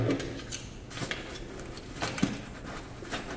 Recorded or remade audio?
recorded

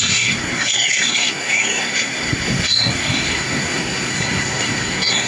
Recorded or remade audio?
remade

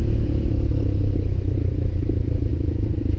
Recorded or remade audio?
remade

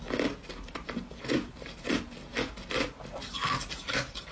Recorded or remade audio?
recorded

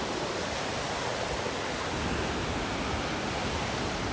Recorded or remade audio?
recorded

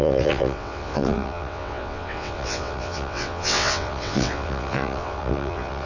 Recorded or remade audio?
remade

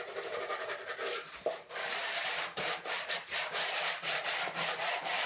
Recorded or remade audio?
remade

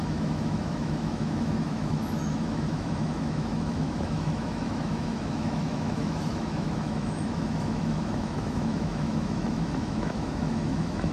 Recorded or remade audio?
remade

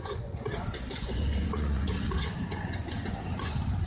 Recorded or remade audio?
remade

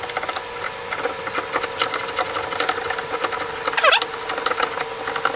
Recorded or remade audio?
recorded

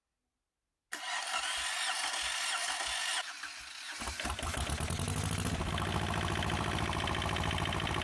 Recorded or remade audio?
recorded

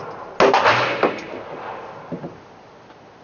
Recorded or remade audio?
recorded